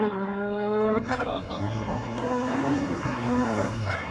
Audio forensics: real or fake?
fake